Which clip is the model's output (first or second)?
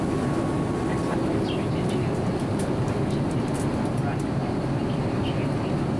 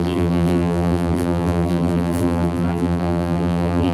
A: second